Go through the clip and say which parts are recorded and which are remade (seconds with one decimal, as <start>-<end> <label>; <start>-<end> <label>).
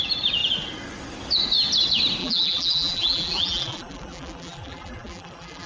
0.0-2.2 recorded; 2.2-5.7 remade